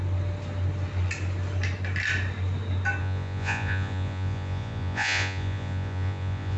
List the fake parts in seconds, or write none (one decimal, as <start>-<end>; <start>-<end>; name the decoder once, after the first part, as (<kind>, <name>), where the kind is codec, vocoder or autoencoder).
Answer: 3.0-6.6 (vocoder, Vocos)